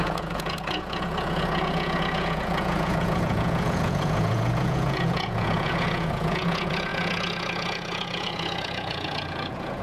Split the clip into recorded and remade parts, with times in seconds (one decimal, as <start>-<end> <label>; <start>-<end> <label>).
0.0-9.8 remade